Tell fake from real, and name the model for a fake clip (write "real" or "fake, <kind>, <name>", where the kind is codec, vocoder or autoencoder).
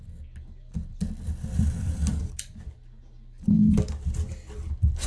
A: real